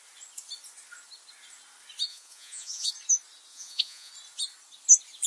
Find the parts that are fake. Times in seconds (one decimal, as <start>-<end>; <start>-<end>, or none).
2.1-2.9; 3.5-4.1